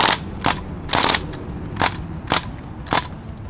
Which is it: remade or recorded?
recorded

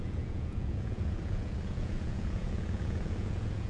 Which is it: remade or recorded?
remade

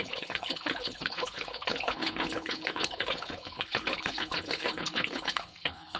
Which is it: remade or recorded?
remade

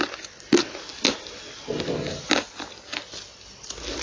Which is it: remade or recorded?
recorded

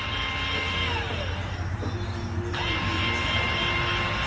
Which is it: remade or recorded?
recorded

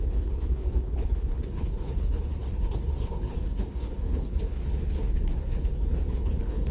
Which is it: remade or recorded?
remade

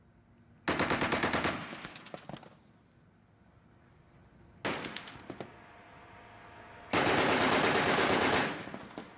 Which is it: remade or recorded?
recorded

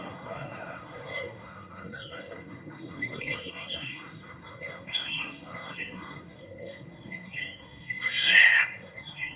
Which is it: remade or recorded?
remade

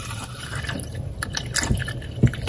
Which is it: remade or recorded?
recorded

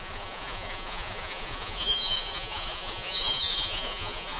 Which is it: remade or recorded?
remade